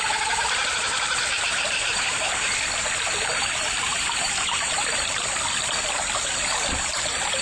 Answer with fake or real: real